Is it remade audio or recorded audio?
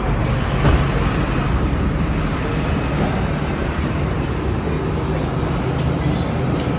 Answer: recorded